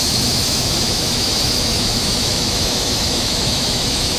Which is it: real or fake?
fake